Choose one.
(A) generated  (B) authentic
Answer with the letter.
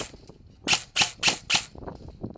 B